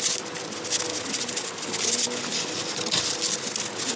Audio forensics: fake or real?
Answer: real